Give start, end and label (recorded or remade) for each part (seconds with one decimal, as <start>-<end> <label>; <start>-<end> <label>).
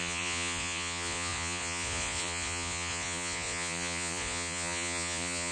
0.0-5.5 remade